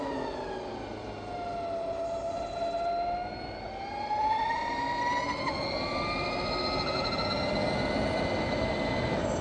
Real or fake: real